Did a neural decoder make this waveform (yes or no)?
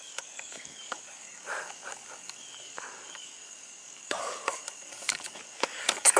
yes